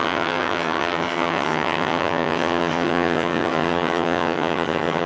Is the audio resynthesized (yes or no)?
yes